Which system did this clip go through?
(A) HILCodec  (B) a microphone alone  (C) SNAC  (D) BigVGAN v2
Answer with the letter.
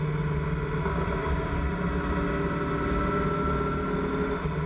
B